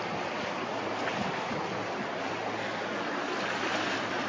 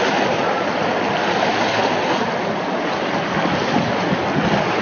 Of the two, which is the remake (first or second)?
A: first